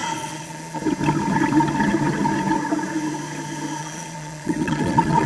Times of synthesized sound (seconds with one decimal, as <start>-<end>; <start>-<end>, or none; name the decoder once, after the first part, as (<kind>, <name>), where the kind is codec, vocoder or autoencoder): 0.0-0.8 (vocoder, Vocos); 3.8-5.3

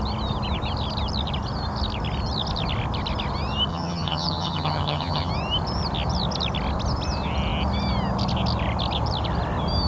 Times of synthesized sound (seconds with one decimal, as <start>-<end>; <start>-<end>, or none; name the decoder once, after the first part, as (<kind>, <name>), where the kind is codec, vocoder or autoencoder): 3.7-5.3 (vocoder, HiFi-GAN)

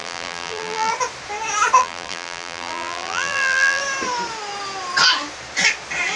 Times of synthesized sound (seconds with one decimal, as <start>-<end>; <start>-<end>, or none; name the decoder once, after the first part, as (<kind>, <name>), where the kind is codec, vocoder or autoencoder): 0.0-0.9 (vocoder, BigVGAN v2); 1.8-3.8

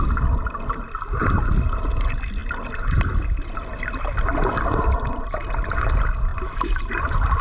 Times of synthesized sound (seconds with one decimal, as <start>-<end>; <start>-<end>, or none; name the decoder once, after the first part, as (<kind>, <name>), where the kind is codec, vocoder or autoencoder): none